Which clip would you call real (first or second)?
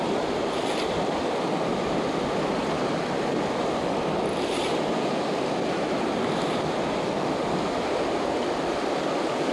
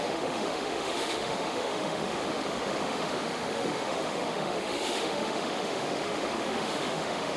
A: first